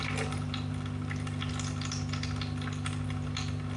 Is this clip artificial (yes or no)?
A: yes